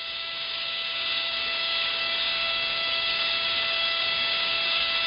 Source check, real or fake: fake